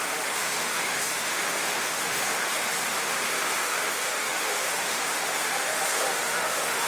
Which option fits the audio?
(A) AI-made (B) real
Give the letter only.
A